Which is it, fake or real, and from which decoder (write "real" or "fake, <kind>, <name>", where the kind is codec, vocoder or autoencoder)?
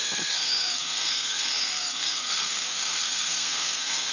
fake, codec, SNAC